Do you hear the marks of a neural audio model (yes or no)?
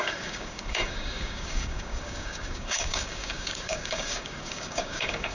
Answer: yes